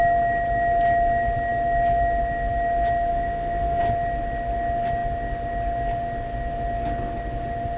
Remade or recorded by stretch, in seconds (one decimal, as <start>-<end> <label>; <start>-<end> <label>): 0.0-3.1 recorded; 3.1-3.8 remade; 3.8-7.8 recorded